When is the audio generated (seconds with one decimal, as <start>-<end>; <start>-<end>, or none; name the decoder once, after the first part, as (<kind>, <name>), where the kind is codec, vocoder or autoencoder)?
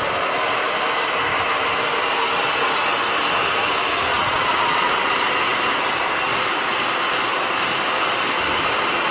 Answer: 4.1-4.9 (vocoder, Vocos)